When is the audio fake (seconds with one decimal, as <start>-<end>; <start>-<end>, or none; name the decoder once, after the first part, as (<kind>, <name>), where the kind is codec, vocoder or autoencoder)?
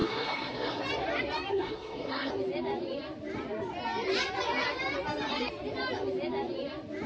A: 0.0-0.8 (codec, SNAC); 1.5-2.3